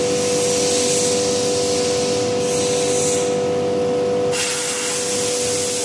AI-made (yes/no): no